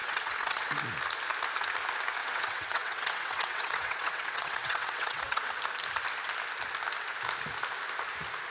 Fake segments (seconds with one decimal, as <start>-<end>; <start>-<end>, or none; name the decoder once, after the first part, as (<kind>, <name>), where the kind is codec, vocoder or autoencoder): 0.0-0.7 (vocoder, WaveNeXt); 2.2-5.5